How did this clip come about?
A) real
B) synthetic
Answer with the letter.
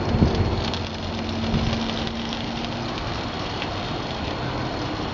A